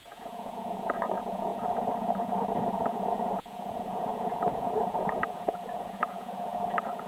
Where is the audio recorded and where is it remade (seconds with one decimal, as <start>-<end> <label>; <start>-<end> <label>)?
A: 0.0-7.1 remade